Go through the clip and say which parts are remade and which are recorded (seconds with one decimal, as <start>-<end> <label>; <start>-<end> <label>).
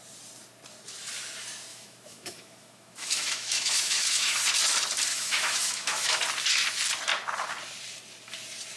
0.0-1.7 recorded; 1.7-4.4 remade; 4.4-5.1 recorded; 5.1-6.2 remade; 6.2-8.8 recorded